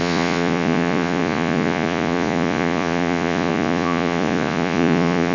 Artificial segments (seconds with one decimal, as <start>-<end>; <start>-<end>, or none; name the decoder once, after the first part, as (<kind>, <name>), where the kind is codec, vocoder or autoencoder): 0.0-5.3 (vocoder, Vocos)